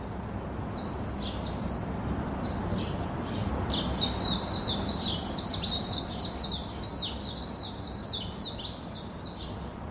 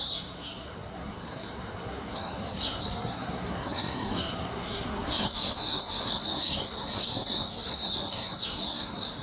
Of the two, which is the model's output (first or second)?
second